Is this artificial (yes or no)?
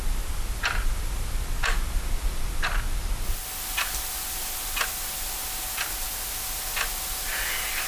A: no